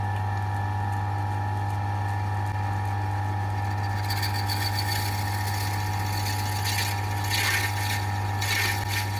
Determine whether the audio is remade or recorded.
recorded